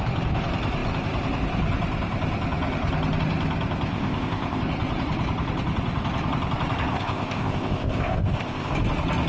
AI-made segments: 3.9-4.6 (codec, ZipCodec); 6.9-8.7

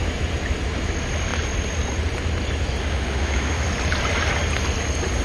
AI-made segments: 2.8-3.7 (autoencoder, DAC-VAE)

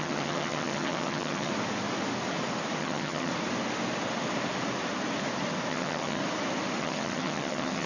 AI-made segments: 0.0-1.5 (vocoder, HiFi-GAN); 2.8-3.3; 5.7-6.2; 6.8-7.9

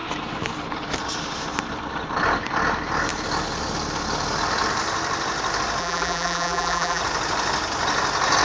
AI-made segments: 5.8-7.0 (vocoder, BigVGAN v2)

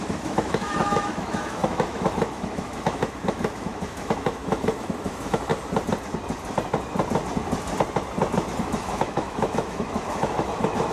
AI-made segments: 0.0-5.5 (autoencoder, DAC-VAE); 8.6-10.9

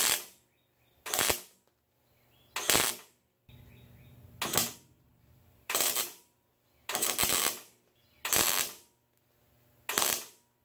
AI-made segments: 5.1-6.5 (vocoder, BigVGAN v2)

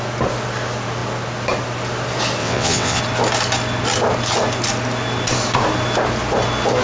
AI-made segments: 2.4-3.0 (vocoder, WaveNeXt)